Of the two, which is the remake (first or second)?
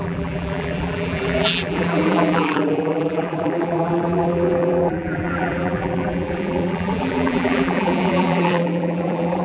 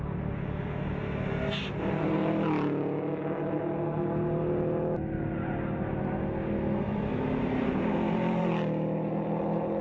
first